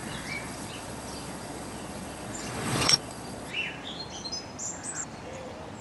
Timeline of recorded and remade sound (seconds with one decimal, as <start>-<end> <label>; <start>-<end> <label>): 0.0-3.5 remade; 3.5-5.8 recorded